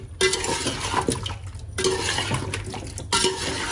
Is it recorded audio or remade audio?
recorded